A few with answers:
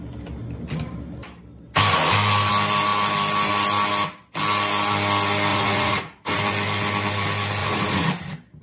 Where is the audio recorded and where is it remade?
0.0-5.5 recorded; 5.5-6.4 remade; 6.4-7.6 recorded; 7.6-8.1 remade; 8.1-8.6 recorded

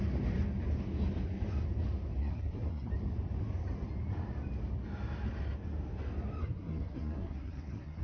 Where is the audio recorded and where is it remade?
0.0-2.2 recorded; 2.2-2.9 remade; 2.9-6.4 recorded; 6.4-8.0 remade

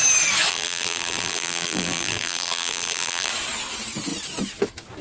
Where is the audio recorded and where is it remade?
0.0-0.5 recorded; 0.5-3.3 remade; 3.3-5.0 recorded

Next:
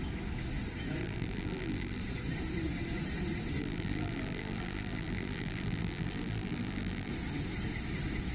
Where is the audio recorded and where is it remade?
0.0-1.0 recorded; 1.0-2.0 remade; 2.0-3.6 recorded; 3.6-7.1 remade; 7.1-8.3 recorded

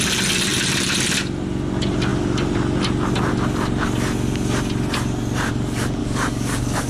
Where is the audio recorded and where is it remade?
0.0-6.0 recorded; 6.0-6.9 remade

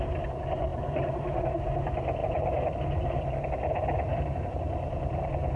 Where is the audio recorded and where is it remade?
0.0-0.7 recorded; 0.7-1.4 remade; 1.4-5.6 recorded